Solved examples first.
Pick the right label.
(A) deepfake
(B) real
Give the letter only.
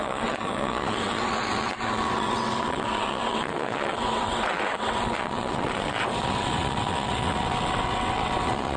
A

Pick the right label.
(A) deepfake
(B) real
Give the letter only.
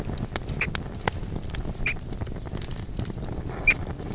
B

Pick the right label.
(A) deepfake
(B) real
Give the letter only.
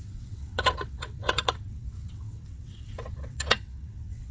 A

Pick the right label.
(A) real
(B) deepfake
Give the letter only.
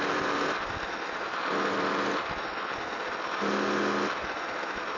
A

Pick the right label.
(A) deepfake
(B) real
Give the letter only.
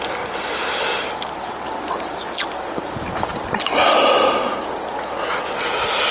B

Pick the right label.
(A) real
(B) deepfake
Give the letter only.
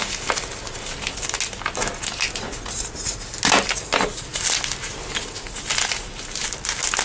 A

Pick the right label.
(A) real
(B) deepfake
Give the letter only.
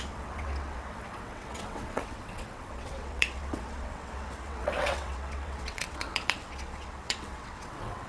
B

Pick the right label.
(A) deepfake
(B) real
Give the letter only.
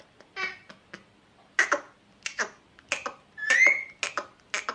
B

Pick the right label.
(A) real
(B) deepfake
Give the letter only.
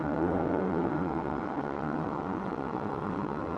B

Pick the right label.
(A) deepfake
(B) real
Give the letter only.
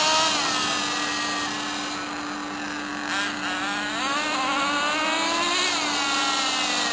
B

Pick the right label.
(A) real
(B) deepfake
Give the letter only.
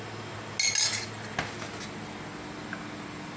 A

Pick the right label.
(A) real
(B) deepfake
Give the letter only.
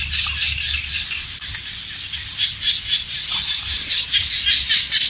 A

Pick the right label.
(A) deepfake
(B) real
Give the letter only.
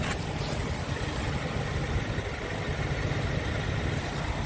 B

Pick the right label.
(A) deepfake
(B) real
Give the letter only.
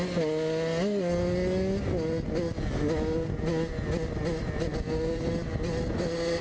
B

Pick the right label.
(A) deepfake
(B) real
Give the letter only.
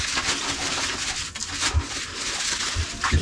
B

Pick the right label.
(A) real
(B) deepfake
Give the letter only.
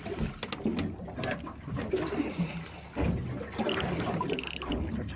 A